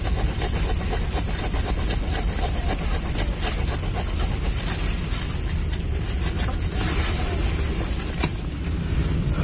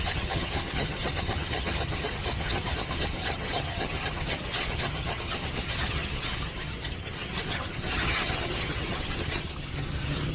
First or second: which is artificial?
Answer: second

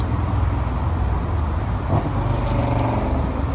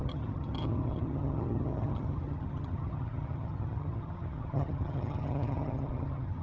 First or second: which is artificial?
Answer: second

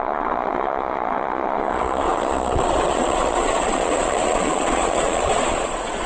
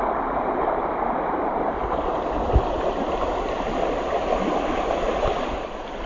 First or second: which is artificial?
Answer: first